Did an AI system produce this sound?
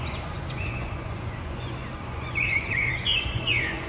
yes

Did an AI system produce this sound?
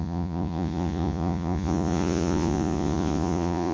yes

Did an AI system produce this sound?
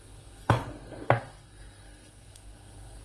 yes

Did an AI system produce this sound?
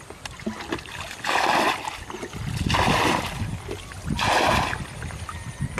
no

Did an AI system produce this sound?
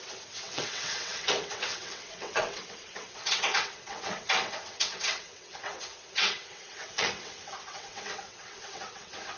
yes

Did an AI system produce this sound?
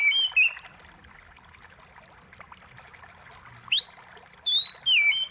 no